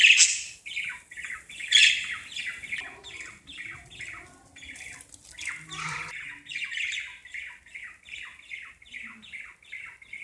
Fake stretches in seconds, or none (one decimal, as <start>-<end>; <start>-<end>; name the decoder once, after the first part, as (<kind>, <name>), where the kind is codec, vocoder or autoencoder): none